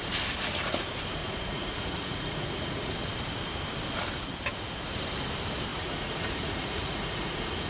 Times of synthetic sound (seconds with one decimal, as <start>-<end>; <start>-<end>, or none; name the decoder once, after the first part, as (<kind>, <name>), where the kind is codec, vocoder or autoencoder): 1.2-2.9 (vocoder, Vocos); 5.7-7.7